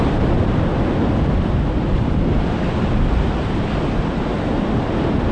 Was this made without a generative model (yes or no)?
yes